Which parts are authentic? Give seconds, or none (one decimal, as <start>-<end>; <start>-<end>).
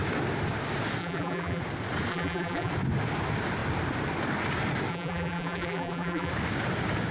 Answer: 0.0-1.0; 1.6-2.1; 2.7-4.9; 6.3-7.1